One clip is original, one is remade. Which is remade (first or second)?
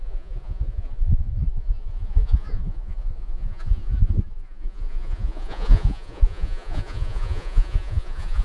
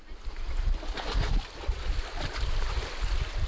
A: first